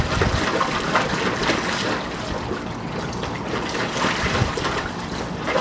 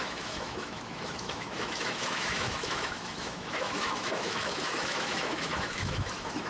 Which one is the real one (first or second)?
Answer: first